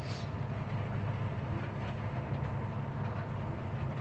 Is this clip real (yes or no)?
yes